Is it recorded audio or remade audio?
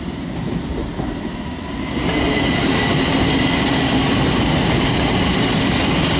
recorded